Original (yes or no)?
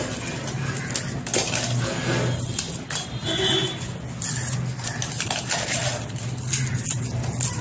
yes